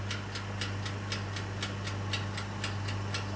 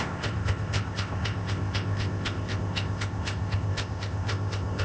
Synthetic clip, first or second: second